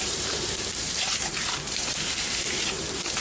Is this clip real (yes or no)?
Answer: no